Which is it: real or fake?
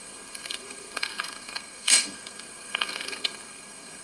fake